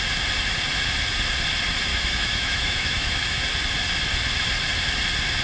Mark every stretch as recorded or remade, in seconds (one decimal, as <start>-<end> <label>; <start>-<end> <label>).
0.0-1.9 recorded; 1.9-3.4 remade; 3.4-5.4 recorded